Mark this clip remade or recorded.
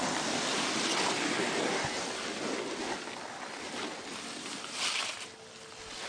recorded